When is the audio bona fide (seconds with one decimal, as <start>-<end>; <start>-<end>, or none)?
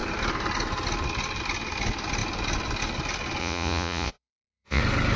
0.0-3.4; 4.8-5.2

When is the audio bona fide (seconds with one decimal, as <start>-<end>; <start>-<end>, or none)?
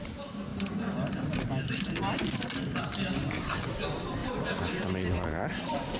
0.0-6.0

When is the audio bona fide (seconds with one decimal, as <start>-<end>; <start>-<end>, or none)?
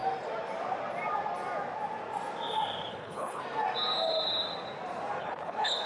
0.0-2.9; 3.4-5.2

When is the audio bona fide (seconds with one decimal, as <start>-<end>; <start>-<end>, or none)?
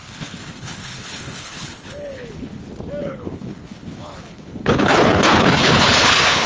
2.6-3.0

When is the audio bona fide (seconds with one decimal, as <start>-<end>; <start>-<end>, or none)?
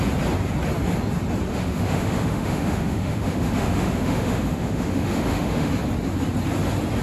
0.0-1.5; 5.7-7.0